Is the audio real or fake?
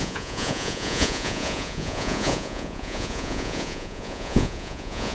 fake